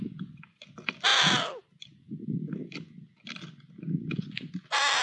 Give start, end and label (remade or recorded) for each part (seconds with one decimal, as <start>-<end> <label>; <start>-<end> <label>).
0.0-5.0 recorded